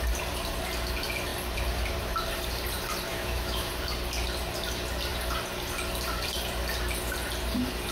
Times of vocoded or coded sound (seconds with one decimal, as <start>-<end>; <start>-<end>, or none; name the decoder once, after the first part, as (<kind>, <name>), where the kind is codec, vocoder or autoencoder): 3.1-3.7 (autoencoder, DAC-VAE)